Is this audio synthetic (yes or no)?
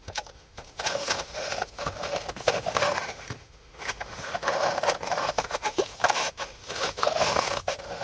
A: yes